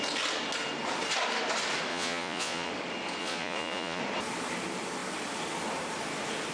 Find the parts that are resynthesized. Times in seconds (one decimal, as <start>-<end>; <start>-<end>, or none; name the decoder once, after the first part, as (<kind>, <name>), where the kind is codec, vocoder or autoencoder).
1.9-2.7 (vocoder, Vocos); 3.2-4.0